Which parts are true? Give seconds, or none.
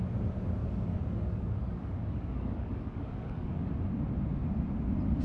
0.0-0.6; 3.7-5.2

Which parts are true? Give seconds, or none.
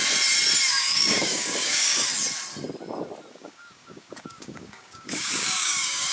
0.0-0.7; 2.1-3.3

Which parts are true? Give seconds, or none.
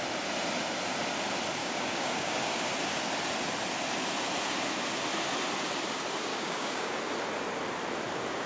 0.0-1.6; 2.7-6.3; 6.9-8.5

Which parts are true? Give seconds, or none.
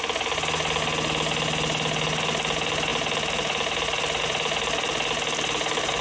0.0-6.0